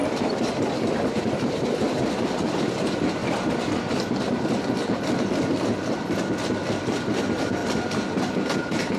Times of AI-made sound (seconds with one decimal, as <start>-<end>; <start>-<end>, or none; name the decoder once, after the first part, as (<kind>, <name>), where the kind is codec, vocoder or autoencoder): 0.0-3.2 (vocoder, BigVGAN v2); 6.8-7.6; 8.6-9.0

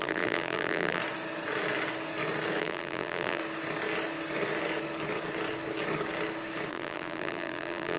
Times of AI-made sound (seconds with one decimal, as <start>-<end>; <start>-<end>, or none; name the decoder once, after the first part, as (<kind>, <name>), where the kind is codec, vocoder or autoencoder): 0.0-1.0 (vocoder, BigVGAN v2); 2.6-3.4; 6.7-8.0

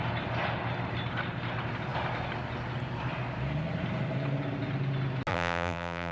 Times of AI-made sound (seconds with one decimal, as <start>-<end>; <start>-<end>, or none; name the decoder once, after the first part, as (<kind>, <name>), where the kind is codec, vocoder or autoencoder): 5.3-6.1 (vocoder, BigVGAN v2)

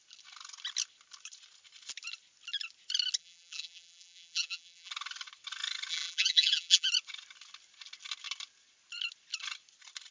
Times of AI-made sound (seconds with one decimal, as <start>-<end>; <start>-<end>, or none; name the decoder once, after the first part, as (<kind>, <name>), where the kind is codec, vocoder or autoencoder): 3.2-4.9 (vocoder, BigVGAN v2); 5.9-6.9

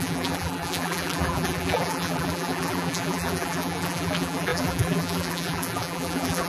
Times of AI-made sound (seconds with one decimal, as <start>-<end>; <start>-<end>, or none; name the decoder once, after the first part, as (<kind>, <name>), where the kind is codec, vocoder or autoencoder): 0.0-6.5 (vocoder, BigVGAN v2)

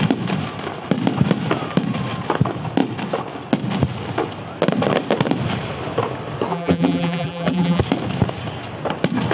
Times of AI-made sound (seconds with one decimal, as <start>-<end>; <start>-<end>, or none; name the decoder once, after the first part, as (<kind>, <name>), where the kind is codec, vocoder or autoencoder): 6.5-7.8 (vocoder, BigVGAN v2)